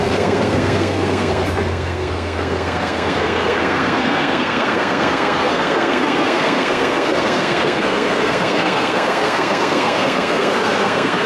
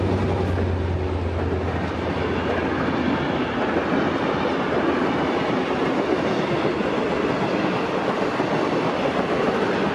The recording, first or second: second